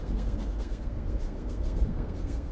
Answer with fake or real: fake